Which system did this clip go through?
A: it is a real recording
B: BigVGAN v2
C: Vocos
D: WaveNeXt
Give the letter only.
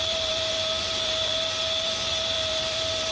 B